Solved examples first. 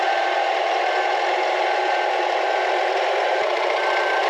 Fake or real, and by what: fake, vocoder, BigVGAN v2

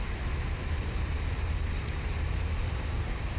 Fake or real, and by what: fake, vocoder, BigVGAN v2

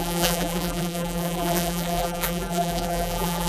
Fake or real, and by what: fake, vocoder, BigVGAN v2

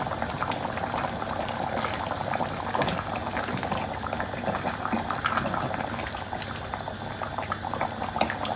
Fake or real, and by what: real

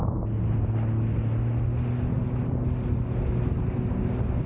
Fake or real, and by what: real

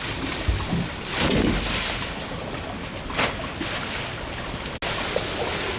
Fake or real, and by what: real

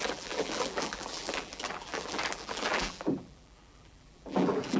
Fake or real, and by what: fake, vocoder, BigVGAN v2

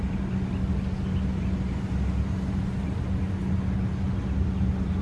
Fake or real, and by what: real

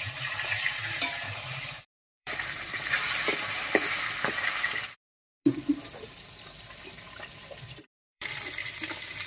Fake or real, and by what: fake, vocoder, BigVGAN v2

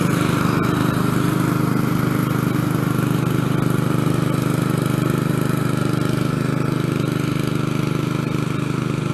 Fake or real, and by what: real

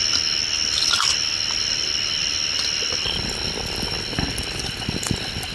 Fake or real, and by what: real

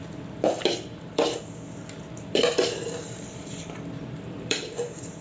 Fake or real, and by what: fake, vocoder, BigVGAN v2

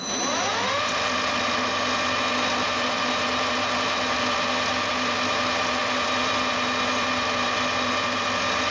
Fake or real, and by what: real